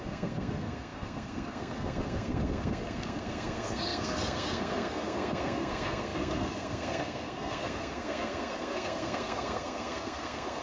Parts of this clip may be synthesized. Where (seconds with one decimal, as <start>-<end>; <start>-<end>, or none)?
0.0-10.6

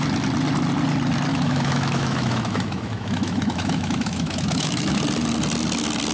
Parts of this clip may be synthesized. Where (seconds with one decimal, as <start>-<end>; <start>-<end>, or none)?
1.3-5.0

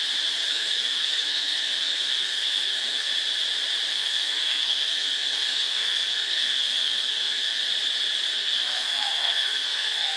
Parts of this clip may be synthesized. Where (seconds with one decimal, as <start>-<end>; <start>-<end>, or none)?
0.5-3.1; 3.9-7.6; 8.3-10.2

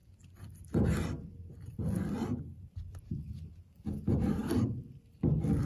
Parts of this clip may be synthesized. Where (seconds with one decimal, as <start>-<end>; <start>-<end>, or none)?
0.0-3.0; 4.4-5.2

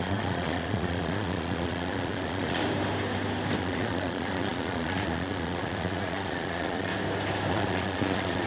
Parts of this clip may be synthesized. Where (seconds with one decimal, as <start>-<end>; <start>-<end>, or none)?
0.0-2.6; 3.6-6.9; 7.5-8.5

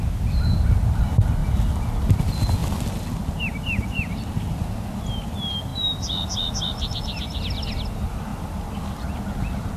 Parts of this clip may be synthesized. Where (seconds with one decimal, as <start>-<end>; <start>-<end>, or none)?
none

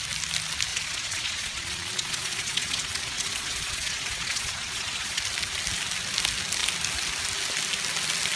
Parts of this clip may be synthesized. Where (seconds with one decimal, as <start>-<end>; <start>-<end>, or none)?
0.7-5.2

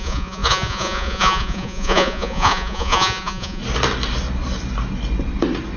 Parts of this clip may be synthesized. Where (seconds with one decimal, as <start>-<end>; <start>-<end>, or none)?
0.0-3.6